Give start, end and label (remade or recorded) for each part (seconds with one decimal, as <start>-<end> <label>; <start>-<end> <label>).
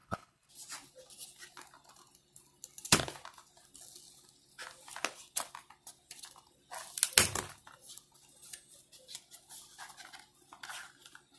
0.0-0.5 remade; 0.5-11.4 recorded